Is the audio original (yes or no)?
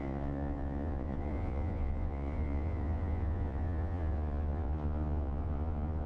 no